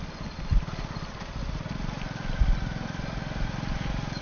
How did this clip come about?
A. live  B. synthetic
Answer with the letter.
A